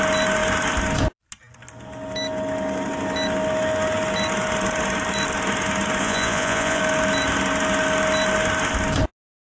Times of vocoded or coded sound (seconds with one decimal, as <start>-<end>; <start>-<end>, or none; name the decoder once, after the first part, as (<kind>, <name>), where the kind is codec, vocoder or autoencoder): 6.0-6.8 (vocoder, Vocos)